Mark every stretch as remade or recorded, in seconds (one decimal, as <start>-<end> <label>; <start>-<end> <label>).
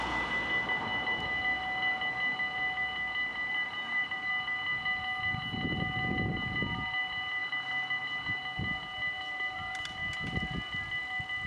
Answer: 0.0-3.3 recorded; 3.3-4.3 remade; 4.3-11.5 recorded